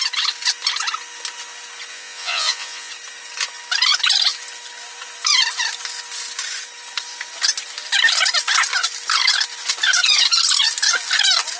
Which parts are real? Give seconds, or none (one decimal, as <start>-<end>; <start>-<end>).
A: 0.0-1.9; 2.9-11.6